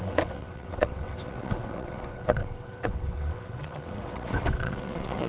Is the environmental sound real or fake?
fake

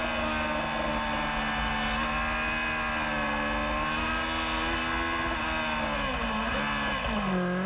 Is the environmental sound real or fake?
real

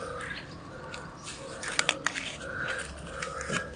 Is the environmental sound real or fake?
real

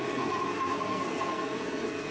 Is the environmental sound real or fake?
fake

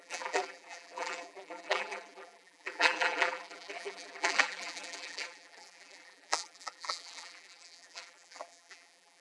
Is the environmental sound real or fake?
fake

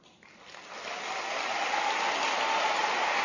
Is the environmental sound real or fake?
real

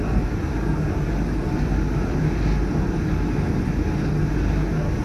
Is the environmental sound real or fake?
real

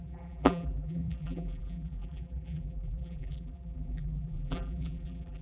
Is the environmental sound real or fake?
fake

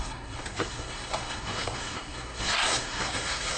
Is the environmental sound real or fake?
fake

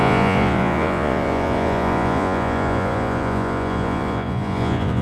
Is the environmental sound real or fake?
fake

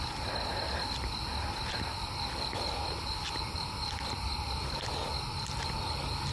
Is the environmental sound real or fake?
real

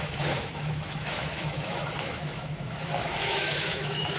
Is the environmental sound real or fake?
fake